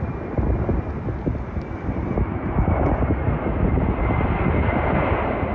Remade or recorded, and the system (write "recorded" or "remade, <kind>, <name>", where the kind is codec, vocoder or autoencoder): recorded